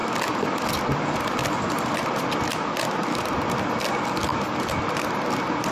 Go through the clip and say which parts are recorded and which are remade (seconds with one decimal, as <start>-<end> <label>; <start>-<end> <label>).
0.0-1.4 recorded; 1.4-2.1 remade; 2.1-5.7 recorded